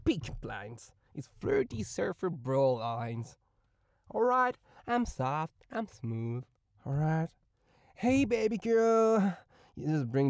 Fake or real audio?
real